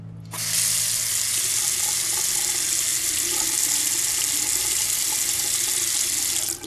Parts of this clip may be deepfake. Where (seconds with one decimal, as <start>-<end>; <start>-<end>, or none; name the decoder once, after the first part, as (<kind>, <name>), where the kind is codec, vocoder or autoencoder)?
none